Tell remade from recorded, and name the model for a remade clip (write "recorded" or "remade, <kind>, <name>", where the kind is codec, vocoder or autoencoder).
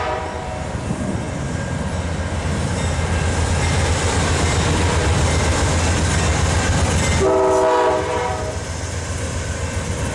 recorded